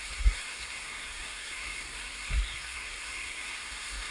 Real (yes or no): no